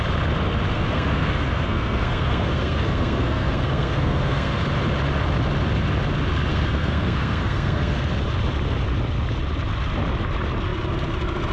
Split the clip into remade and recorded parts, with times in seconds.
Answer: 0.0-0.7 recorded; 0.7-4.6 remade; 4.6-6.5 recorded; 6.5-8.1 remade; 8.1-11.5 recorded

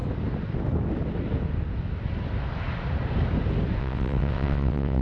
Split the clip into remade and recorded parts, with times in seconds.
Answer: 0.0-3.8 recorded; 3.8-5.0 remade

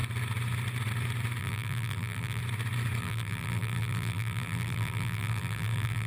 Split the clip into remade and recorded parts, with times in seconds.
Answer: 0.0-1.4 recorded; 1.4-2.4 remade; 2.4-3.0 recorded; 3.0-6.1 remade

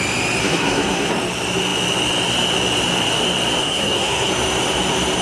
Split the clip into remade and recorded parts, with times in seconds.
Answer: 0.0-0.4 recorded; 0.4-1.1 remade; 1.1-3.6 recorded; 3.6-4.3 remade; 4.3-5.2 recorded